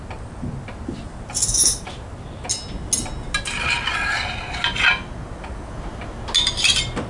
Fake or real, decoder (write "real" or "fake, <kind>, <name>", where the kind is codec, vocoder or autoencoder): real